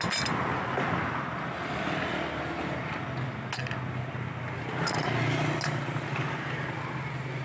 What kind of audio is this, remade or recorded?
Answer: recorded